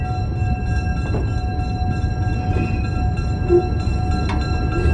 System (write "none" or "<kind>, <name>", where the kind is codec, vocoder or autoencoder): none